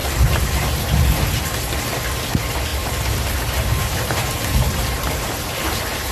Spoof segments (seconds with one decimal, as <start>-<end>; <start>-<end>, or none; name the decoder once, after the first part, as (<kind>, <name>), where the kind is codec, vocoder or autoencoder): 0.0-1.0 (vocoder, BigVGAN v2); 3.7-6.1